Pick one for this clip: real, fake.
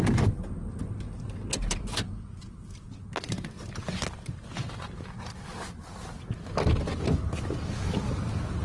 real